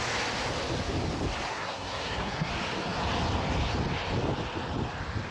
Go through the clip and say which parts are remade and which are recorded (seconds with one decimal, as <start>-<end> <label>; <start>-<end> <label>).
0.0-1.5 recorded; 1.5-2.5 remade; 2.5-5.3 recorded

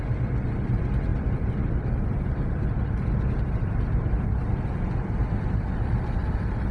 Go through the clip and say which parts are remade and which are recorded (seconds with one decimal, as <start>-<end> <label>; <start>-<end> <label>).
0.0-1.1 recorded; 1.1-4.7 remade; 4.7-6.7 recorded

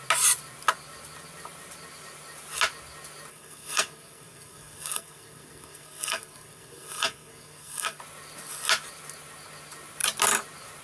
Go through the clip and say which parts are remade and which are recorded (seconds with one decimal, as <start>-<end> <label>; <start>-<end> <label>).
0.0-3.3 recorded; 3.3-8.0 remade; 8.0-10.8 recorded

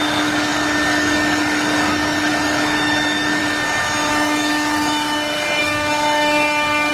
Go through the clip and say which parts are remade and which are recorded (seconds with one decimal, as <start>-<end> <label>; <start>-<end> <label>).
0.0-3.4 remade; 3.4-4.1 recorded; 4.1-6.9 remade

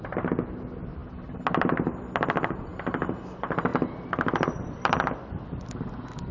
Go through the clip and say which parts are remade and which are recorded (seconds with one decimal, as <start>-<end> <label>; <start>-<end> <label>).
0.0-6.3 recorded

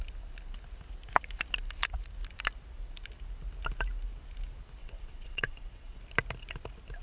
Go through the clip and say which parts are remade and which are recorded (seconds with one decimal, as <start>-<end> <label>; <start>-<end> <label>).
0.0-4.8 recorded; 4.8-6.0 remade; 6.0-7.0 recorded

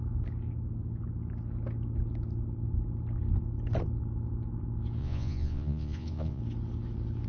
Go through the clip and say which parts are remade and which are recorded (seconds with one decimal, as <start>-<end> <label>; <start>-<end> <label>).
0.0-5.0 recorded; 5.0-6.4 remade; 6.4-7.3 recorded

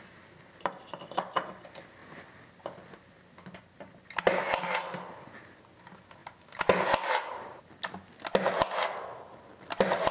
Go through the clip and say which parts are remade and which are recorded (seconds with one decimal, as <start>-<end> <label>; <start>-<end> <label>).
0.0-10.1 recorded